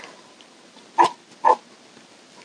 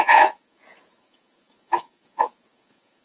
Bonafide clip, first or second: first